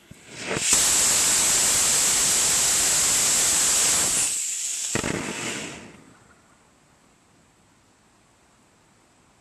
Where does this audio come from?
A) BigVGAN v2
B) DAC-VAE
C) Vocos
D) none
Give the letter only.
D